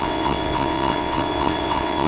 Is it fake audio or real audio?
fake